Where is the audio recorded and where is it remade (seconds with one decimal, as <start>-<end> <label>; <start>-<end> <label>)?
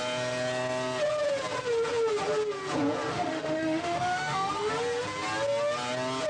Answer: 0.0-3.1 recorded; 3.1-4.7 remade; 4.7-6.3 recorded